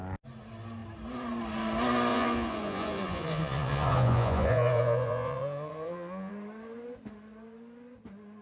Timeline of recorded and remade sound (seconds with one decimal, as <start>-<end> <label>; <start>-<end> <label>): 0.0-2.1 recorded; 2.1-6.3 remade; 6.3-8.4 recorded